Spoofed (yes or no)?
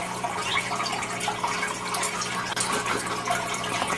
no